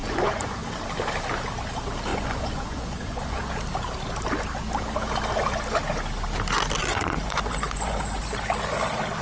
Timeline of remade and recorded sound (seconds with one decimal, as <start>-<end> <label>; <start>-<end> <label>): 0.0-0.6 remade; 0.6-2.1 recorded; 2.1-3.5 remade; 3.5-6.8 recorded; 6.8-8.2 remade; 8.2-9.2 recorded